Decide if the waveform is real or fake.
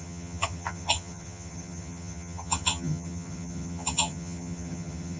fake